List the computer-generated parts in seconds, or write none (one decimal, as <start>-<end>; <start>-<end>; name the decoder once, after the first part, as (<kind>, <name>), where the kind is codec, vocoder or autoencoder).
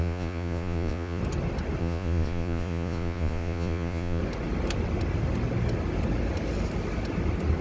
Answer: 0.0-1.2 (vocoder, Vocos); 1.8-4.2